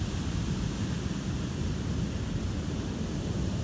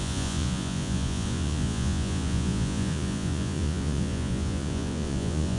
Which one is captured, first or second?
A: first